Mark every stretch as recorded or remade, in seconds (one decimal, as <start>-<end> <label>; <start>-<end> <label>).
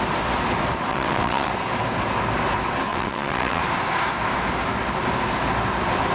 0.0-0.9 recorded; 0.9-1.5 remade; 1.5-2.9 recorded; 2.9-3.6 remade; 3.6-6.1 recorded